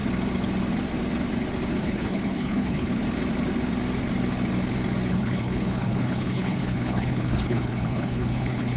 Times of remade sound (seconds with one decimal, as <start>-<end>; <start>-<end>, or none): 1.8-3.0; 5.1-8.8